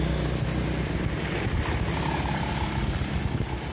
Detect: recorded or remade recorded